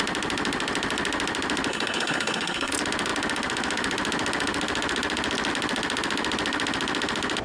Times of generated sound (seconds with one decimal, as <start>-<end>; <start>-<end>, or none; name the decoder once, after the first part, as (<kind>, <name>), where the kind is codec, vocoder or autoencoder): 1.7-2.7 (codec, SNAC)